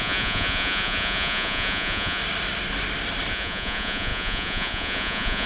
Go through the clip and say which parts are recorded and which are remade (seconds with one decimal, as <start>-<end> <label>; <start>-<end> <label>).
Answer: 0.0-2.2 remade; 2.2-3.3 recorded; 3.3-5.5 remade